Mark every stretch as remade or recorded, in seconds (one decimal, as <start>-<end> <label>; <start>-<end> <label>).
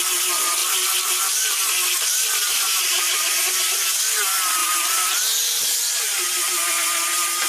0.0-2.5 recorded; 2.5-3.3 remade; 3.3-7.5 recorded